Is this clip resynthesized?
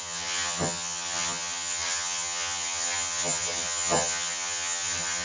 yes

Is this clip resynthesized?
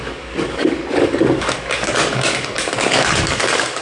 yes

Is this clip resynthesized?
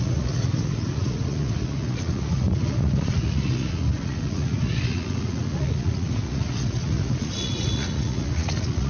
yes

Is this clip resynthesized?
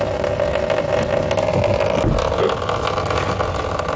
no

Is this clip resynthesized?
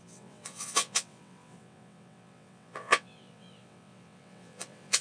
yes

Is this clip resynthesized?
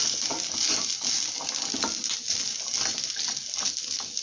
no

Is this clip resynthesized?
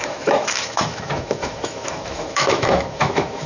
yes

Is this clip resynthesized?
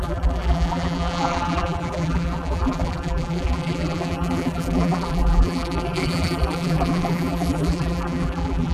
yes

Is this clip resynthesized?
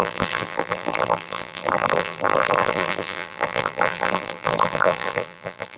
yes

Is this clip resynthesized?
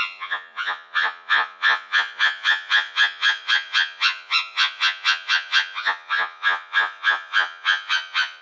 yes